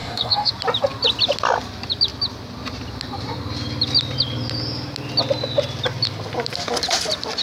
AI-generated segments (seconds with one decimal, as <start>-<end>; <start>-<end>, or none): 0.0-0.5